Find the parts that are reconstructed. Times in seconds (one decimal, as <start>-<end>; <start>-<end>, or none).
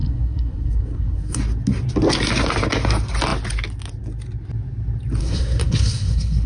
0.0-1.4; 5.2-6.5